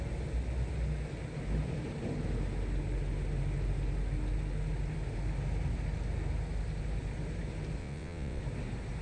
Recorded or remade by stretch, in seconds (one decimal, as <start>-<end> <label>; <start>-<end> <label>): 0.0-7.8 recorded; 7.8-8.4 remade; 8.4-9.0 recorded